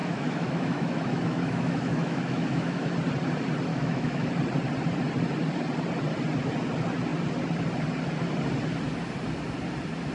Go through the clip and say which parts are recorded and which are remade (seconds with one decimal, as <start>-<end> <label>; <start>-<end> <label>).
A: 0.0-2.9 remade; 2.9-3.7 recorded; 3.7-4.3 remade; 4.3-10.1 recorded

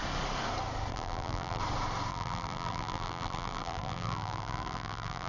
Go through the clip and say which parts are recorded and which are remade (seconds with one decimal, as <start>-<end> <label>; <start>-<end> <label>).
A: 0.0-0.9 recorded; 0.9-1.6 remade; 1.6-2.1 recorded; 2.1-5.3 remade

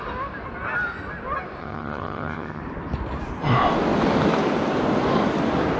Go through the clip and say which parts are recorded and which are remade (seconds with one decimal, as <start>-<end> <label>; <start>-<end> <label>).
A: 0.0-1.6 recorded; 1.6-2.6 remade; 2.6-5.8 recorded

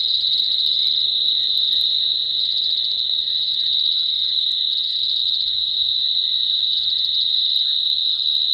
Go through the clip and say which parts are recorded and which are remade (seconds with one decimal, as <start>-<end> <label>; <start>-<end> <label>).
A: 0.0-2.2 recorded; 2.2-3.1 remade; 3.1-5.2 recorded; 5.2-5.8 remade; 5.8-8.5 recorded

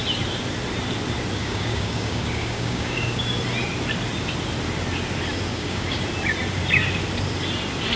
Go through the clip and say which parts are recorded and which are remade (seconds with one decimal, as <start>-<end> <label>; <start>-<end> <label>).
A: 0.0-1.4 recorded; 1.4-3.2 remade; 3.2-5.5 recorded; 5.5-6.0 remade; 6.0-8.0 recorded

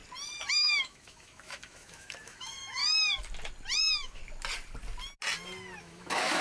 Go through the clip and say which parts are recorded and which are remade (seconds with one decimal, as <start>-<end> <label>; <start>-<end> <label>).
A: 0.0-0.5 recorded; 0.5-2.8 remade; 2.8-3.8 recorded; 3.8-4.2 remade; 4.2-5.8 recorded; 5.8-6.4 remade

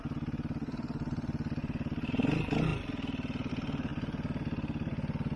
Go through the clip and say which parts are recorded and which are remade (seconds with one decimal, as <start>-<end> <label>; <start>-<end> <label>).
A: 0.0-1.6 recorded; 1.6-2.1 remade; 2.1-5.4 recorded